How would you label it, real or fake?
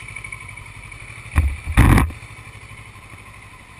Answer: real